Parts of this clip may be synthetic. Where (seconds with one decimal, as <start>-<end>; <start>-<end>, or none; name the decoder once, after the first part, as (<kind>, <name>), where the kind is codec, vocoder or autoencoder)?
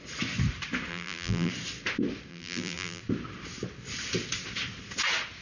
0.9-1.5 (vocoder, BigVGAN v2); 2.3-3.0